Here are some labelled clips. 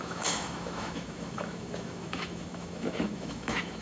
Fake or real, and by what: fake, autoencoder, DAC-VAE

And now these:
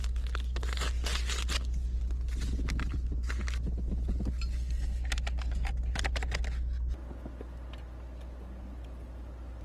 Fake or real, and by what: real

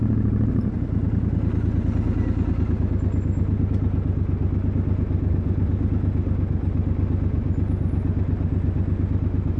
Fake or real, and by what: real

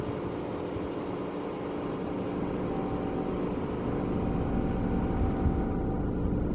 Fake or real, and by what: real